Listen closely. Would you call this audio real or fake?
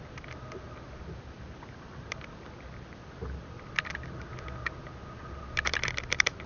real